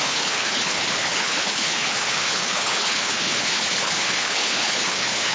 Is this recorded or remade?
remade